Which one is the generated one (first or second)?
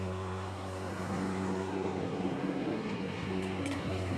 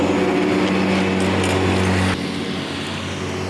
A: first